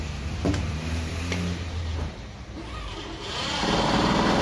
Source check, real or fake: fake